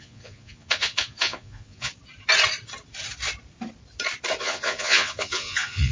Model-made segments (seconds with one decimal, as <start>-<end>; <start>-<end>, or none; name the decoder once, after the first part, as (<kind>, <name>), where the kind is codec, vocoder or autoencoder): 0.0-1.9 (vocoder, Vocos); 4.4-5.9